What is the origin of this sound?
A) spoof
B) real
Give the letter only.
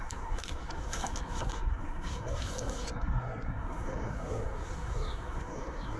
A